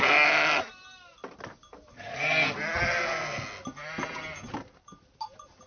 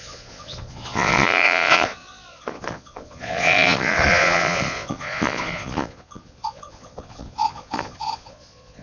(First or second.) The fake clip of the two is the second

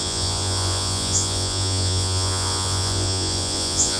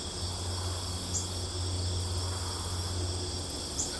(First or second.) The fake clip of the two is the first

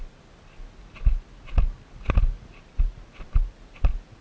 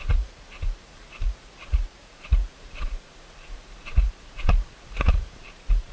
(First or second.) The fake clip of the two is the second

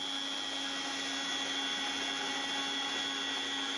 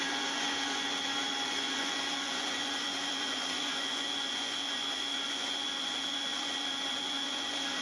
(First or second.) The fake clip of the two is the second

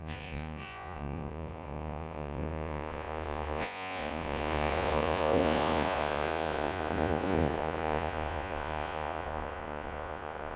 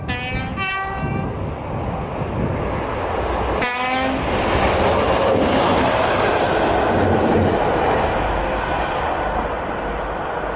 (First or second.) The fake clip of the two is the first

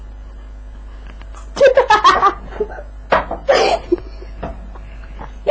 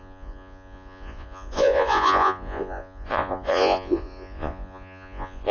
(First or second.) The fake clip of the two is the second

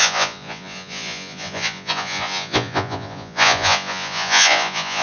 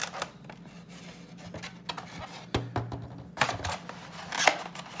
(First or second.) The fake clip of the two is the first